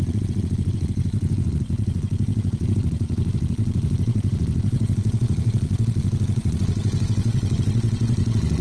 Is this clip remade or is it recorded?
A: remade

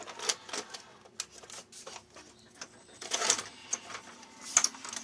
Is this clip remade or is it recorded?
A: recorded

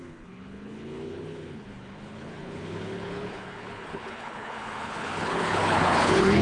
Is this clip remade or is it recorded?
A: remade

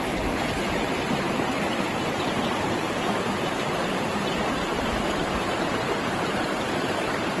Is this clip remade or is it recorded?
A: remade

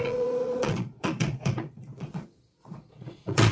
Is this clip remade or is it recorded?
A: remade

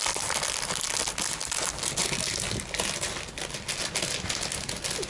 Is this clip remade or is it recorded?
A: recorded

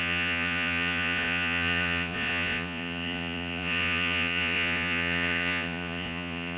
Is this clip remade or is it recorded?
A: remade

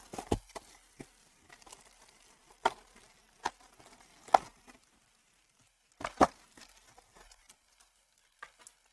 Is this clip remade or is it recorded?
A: recorded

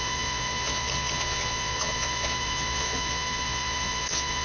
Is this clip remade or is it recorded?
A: remade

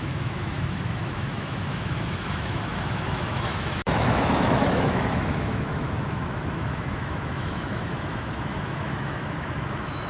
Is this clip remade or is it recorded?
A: remade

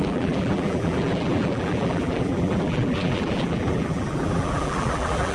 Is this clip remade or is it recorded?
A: remade